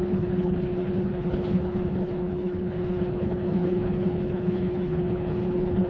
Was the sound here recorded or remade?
remade